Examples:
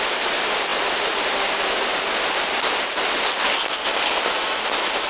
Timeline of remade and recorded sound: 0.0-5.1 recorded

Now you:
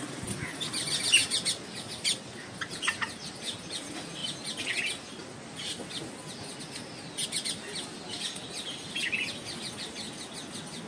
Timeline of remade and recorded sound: 0.0-10.9 recorded

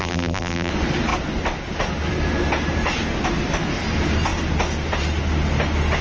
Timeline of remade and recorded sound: 0.0-0.7 remade; 0.7-6.0 recorded

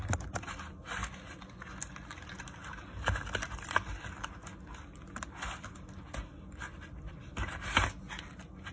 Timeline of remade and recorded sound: 0.0-8.7 recorded

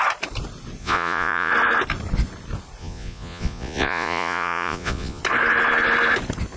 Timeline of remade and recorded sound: 0.0-0.8 recorded; 0.8-1.5 remade; 1.5-2.8 recorded; 2.8-5.2 remade; 5.2-6.6 recorded

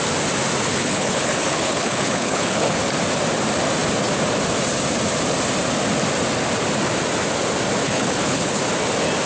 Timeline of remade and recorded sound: 0.0-0.7 recorded; 0.7-2.8 remade; 2.8-7.8 recorded; 7.8-8.6 remade; 8.6-9.3 recorded